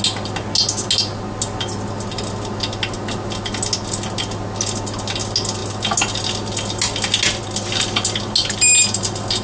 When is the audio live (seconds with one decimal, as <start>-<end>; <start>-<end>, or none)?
0.0-9.4